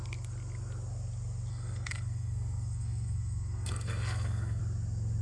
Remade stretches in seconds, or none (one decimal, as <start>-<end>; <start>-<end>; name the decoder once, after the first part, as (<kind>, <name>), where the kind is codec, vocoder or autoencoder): 1.5-4.6 (codec, SNAC)